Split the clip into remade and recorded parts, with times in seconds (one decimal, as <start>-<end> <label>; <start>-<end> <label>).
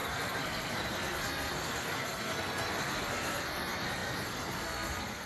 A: 0.0-5.3 remade